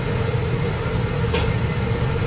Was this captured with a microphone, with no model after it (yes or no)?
yes